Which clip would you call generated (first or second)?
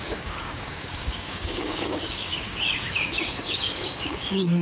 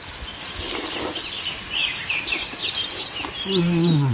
first